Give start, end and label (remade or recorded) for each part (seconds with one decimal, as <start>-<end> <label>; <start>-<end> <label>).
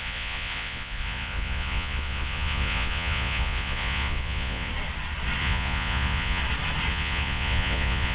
0.0-4.7 remade; 4.7-5.4 recorded; 5.4-6.4 remade; 6.4-6.9 recorded; 6.9-8.1 remade